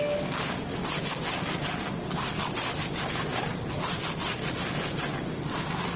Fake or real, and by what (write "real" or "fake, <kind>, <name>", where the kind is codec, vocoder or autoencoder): real